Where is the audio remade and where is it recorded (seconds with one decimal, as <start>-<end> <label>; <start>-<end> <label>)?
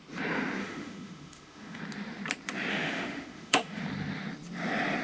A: 0.0-0.6 recorded; 0.6-1.8 remade; 1.8-2.7 recorded; 2.7-3.8 remade; 3.8-5.0 recorded